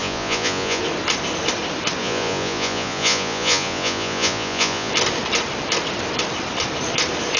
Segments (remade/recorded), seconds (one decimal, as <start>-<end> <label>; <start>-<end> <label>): 0.0-0.8 remade; 0.8-2.0 recorded; 2.0-4.9 remade; 4.9-7.4 recorded